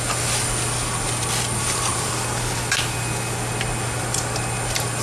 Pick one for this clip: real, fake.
real